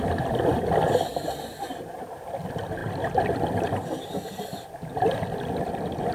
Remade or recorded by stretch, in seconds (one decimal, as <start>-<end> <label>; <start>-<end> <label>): 0.0-6.1 recorded